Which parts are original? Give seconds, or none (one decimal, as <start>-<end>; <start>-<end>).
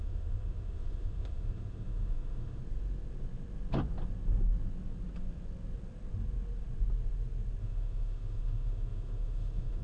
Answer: 2.6-7.6